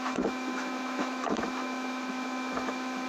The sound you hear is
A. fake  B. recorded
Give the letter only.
A